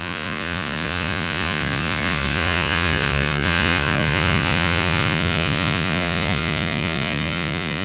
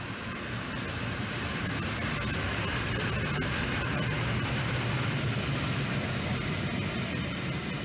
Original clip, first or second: second